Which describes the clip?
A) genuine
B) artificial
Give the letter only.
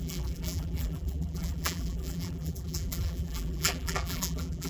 B